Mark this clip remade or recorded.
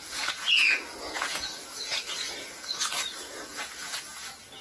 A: remade